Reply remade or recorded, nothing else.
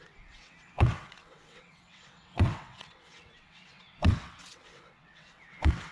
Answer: remade